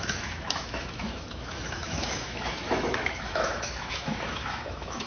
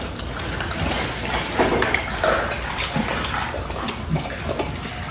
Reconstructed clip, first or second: first